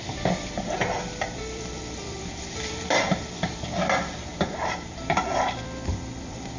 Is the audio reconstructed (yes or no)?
yes